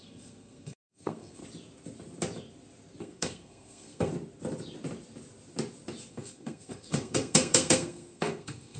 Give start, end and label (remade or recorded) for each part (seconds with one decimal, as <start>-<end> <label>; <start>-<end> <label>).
0.0-1.4 remade; 1.4-3.0 recorded; 3.0-4.1 remade; 4.1-6.1 recorded; 6.1-8.8 remade